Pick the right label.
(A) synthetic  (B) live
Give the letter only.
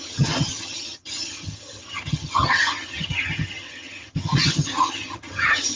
A